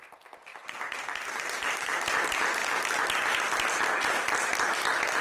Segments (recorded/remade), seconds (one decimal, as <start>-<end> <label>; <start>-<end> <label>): 0.0-0.5 recorded; 0.5-2.0 remade; 2.0-5.2 recorded